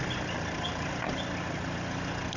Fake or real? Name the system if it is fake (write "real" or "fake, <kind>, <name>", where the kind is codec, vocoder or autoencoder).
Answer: real